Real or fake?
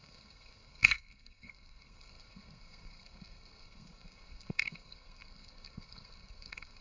fake